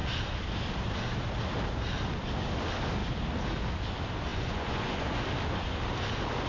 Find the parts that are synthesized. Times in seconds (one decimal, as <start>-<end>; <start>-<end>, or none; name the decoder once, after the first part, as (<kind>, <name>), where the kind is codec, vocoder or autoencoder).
4.3-5.2 (vocoder, Vocos)

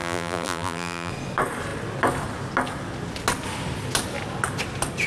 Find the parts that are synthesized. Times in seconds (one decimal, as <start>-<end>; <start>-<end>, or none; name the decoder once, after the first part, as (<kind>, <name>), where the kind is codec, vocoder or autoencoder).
0.0-1.1 (vocoder, BigVGAN v2)

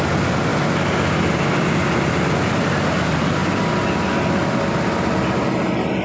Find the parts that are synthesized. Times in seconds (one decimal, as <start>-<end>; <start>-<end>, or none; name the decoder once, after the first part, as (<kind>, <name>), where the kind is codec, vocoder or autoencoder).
none

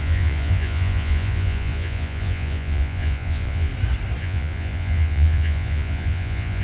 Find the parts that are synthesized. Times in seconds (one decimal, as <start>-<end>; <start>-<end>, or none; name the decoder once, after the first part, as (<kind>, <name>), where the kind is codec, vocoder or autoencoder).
0.0-3.7 (vocoder, Vocos); 4.2-6.6

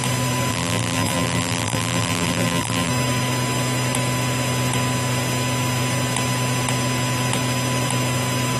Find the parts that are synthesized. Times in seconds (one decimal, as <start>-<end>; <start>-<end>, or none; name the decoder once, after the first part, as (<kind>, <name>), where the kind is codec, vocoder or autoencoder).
0.5-2.9 (vocoder, BigVGAN v2)

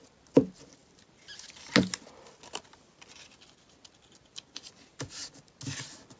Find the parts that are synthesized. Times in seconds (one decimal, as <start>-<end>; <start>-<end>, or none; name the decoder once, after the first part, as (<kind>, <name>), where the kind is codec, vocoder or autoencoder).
none